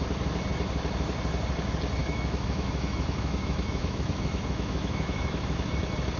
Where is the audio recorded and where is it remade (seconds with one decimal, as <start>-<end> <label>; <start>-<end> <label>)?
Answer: 0.0-2.0 recorded; 2.0-5.7 remade; 5.7-6.2 recorded